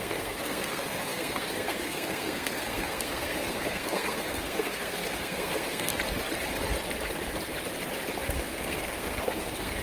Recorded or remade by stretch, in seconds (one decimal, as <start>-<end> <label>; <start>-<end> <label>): 0.0-5.9 remade; 5.9-8.2 recorded; 8.2-9.8 remade